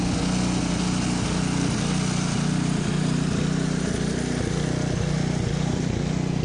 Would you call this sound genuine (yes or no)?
yes